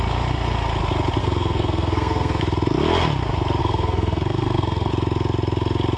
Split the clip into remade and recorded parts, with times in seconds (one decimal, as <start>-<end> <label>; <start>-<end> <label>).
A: 0.0-1.2 recorded; 1.2-2.4 remade; 2.4-3.6 recorded; 3.6-4.9 remade; 4.9-6.0 recorded